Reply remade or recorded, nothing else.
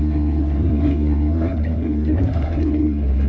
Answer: remade